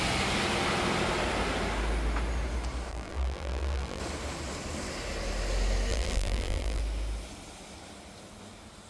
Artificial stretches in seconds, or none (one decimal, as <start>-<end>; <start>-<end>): 2.9-4.0; 5.9-6.8